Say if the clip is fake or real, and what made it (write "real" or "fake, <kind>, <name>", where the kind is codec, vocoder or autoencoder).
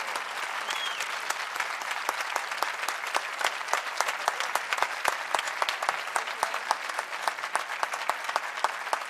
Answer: real